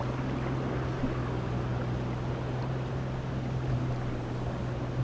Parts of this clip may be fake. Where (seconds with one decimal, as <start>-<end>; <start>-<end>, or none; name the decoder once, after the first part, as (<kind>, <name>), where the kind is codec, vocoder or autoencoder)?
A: none